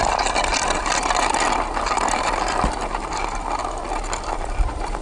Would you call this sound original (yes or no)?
no